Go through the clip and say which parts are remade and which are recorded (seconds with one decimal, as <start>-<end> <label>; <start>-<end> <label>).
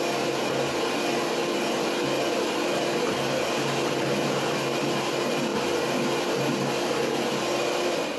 0.0-8.2 recorded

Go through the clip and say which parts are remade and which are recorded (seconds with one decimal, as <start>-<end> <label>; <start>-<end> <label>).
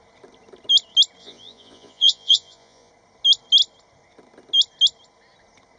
0.0-1.2 recorded; 1.2-2.9 remade; 2.9-5.8 recorded